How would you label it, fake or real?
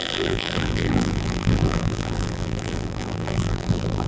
fake